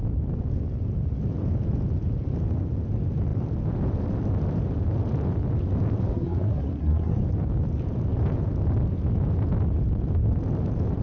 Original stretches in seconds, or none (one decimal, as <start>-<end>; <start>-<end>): 0.0-6.1; 7.2-11.0